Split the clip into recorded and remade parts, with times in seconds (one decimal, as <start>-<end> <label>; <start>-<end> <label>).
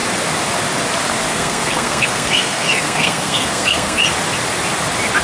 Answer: 0.0-1.3 recorded; 1.3-4.0 remade; 4.0-5.2 recorded